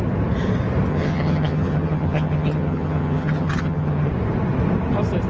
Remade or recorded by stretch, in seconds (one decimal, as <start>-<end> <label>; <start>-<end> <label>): 0.0-0.9 recorded; 0.9-4.1 remade; 4.1-5.3 recorded